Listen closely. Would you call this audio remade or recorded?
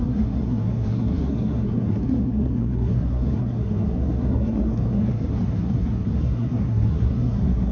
remade